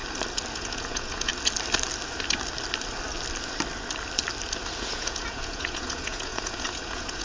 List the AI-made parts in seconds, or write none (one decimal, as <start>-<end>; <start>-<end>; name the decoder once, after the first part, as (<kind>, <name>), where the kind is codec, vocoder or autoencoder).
0.5-1.3 (vocoder, Vocos); 4.8-7.2